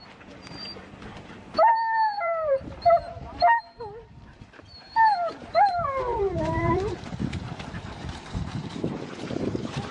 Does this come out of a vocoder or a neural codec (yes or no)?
yes